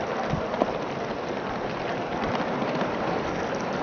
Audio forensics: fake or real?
real